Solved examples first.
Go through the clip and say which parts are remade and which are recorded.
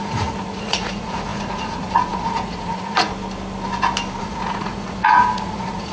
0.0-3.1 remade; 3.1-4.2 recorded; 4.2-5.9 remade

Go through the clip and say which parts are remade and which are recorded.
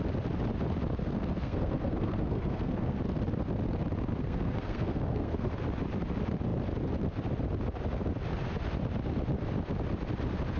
0.0-1.0 recorded; 1.0-3.0 remade; 3.0-4.2 recorded; 4.2-5.5 remade; 5.5-10.6 recorded